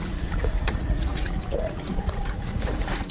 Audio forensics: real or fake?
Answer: fake